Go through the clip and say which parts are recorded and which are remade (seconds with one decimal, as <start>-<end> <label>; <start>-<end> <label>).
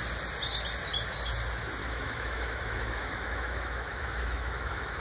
0.0-1.8 recorded; 1.8-5.0 remade